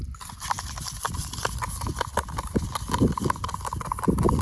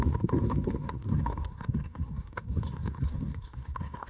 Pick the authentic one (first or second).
first